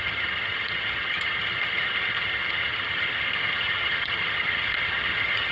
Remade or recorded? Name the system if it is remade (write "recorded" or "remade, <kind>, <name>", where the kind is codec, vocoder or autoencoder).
remade, vocoder, HiFi-GAN